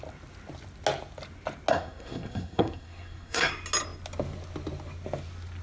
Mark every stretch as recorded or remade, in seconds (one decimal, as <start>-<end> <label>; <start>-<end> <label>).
0.0-1.7 recorded; 1.7-3.5 remade; 3.5-5.6 recorded